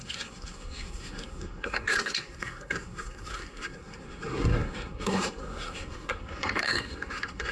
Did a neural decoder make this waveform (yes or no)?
yes